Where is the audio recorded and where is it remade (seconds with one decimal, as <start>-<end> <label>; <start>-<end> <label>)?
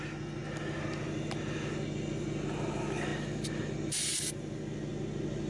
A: 0.0-5.5 recorded